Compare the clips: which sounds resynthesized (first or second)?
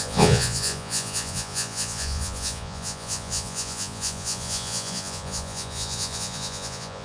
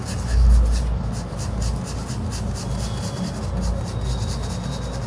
first